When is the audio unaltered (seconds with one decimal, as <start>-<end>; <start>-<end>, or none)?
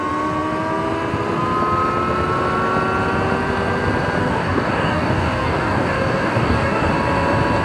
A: 0.0-4.2; 6.9-7.6